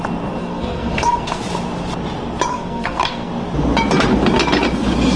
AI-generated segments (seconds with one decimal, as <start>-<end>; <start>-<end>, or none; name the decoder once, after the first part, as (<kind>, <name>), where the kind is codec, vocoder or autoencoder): 0.4-1.4 (codec, SNAC); 2.5-3.3